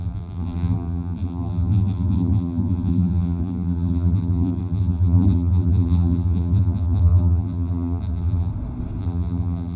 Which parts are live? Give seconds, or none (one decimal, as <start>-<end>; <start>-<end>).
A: 8.5-9.0

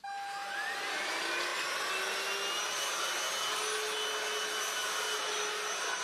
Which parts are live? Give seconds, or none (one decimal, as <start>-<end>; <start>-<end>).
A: 0.0-4.8; 5.3-6.0

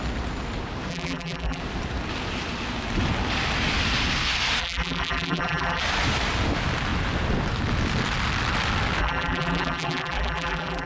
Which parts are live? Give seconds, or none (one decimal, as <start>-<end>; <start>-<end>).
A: 0.0-0.9; 1.6-4.6; 5.8-9.0

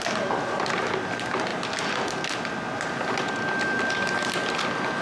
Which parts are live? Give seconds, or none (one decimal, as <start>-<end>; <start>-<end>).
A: 0.0-5.0